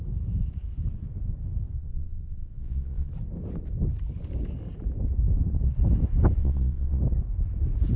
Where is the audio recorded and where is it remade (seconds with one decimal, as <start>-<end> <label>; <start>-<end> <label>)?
0.0-1.8 recorded; 1.8-3.1 remade; 3.1-6.4 recorded; 6.4-7.0 remade; 7.0-8.0 recorded